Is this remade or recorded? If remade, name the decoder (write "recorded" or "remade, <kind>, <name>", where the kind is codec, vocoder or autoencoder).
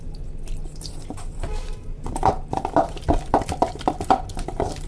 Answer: recorded